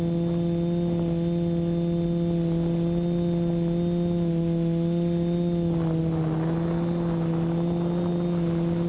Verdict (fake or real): real